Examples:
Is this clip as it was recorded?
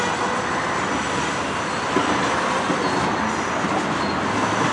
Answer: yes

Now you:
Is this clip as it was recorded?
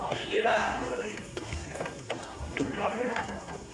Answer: no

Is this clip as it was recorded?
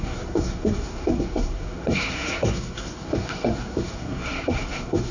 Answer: no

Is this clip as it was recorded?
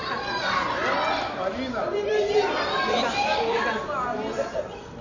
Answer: yes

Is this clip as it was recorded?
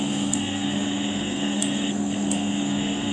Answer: no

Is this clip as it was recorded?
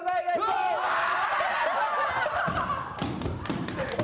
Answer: yes